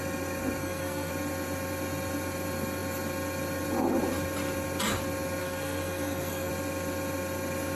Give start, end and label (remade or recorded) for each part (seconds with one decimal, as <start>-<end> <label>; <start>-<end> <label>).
0.0-0.6 recorded; 0.6-1.1 remade; 1.1-5.4 recorded; 5.4-6.5 remade; 6.5-7.8 recorded